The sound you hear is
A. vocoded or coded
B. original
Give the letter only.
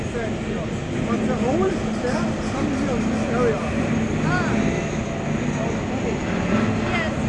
B